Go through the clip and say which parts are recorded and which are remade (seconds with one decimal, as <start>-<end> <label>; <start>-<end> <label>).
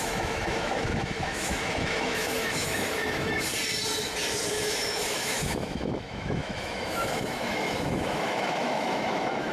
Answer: 0.0-3.5 remade; 3.5-4.5 recorded; 4.5-9.5 remade